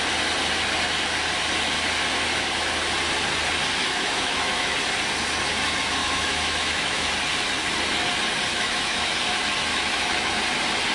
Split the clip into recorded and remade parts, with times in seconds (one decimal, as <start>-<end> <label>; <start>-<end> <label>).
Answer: 0.0-3.8 recorded; 3.8-4.7 remade; 4.7-6.0 recorded; 6.0-7.1 remade; 7.1-8.5 recorded; 8.5-9.1 remade; 9.1-9.7 recorded; 9.7-10.3 remade; 10.3-10.9 recorded